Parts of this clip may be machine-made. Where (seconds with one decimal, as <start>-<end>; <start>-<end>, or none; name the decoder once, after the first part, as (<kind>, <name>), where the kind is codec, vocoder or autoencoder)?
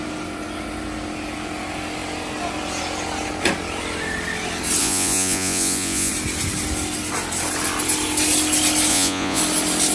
4.8-6.1 (vocoder, Vocos); 8.9-9.4